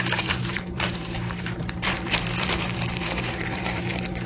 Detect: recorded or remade remade